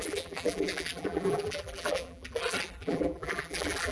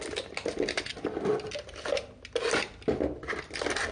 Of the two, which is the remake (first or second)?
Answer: first